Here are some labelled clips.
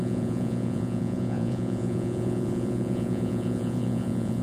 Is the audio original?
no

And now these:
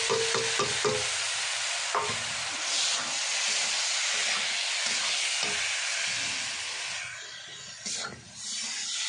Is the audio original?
yes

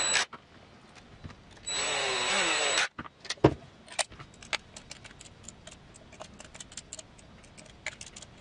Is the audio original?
yes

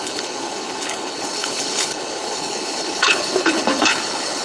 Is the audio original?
no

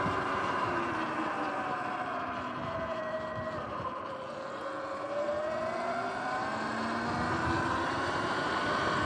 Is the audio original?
yes